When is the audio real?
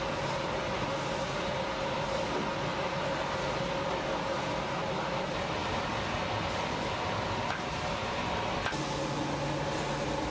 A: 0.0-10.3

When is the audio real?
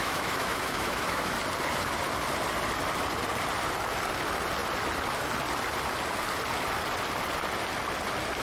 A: 1.4-8.4